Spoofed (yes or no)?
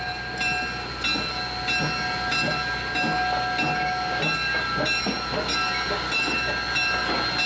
no